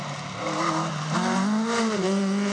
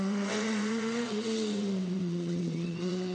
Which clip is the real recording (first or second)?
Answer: first